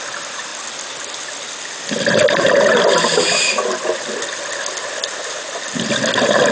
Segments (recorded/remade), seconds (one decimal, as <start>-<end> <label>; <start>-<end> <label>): 0.0-6.5 recorded